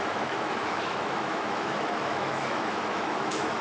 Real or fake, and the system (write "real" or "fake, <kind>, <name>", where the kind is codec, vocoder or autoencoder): fake, autoencoder, DAC-VAE